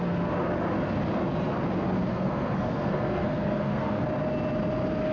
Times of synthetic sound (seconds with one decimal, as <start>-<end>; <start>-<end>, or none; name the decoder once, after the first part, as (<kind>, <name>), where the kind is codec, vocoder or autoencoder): 2.1-4.0 (codec, SNAC)